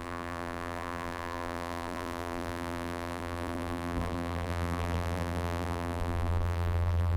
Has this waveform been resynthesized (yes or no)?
yes